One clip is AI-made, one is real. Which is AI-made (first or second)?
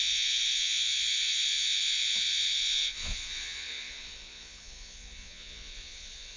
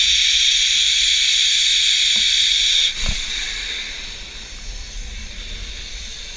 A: first